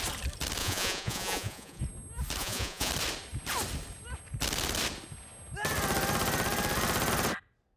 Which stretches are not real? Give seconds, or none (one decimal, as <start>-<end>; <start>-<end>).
0.6-1.8; 2.4-2.9

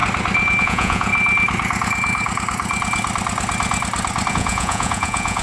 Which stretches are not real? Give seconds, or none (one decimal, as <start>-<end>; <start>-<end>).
0.6-1.1; 4.3-5.4

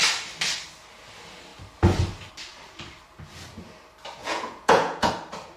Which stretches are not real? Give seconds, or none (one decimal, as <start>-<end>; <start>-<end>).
4.2-5.1

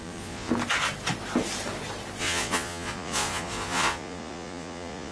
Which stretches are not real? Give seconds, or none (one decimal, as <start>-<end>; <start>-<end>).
0.0-0.5; 2.2-5.1

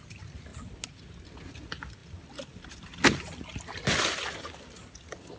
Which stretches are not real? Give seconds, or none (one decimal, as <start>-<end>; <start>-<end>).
none

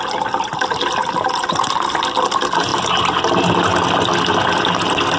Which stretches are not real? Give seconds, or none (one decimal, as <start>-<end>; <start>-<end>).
none

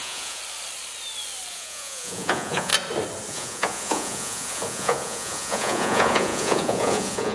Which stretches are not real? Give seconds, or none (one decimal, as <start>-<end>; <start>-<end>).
0.0-0.4; 1.5-2.7; 3.3-7.3

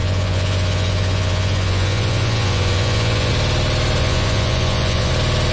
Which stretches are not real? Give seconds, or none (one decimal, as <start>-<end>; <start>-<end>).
0.0-3.3; 4.0-5.1